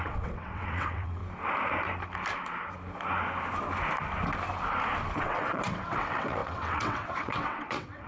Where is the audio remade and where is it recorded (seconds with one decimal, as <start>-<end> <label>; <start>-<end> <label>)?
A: 0.0-1.2 remade; 1.2-5.2 recorded; 5.2-8.1 remade